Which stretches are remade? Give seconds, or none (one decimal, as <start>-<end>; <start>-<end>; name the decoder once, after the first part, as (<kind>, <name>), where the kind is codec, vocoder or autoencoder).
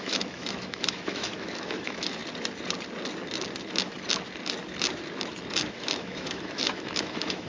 0.0-2.2 (autoencoder, DAC-VAE); 5.7-7.5